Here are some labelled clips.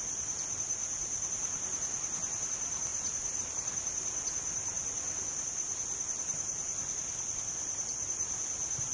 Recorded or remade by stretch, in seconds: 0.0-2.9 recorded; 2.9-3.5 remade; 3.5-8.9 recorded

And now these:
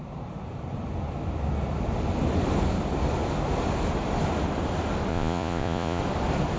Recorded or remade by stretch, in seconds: 0.0-5.1 recorded; 5.1-6.0 remade; 6.0-6.6 recorded

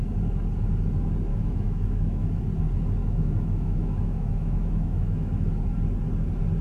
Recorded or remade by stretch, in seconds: 0.0-1.3 recorded; 1.3-2.4 remade; 2.4-3.0 recorded; 3.0-5.5 remade; 5.5-6.6 recorded

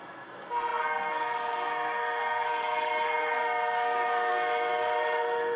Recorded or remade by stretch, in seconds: 0.0-5.6 remade

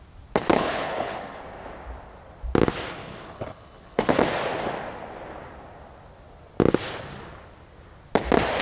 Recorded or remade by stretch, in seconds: 0.0-0.5 recorded; 0.5-1.4 remade; 1.4-3.0 recorded; 3.0-4.2 remade; 4.2-8.6 recorded

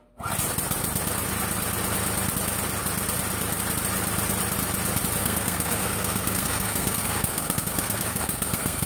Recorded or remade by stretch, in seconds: 0.0-5.2 recorded; 5.2-8.9 remade